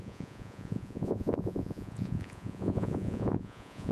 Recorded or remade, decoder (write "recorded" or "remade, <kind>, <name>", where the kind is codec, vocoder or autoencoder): remade, vocoder, Vocos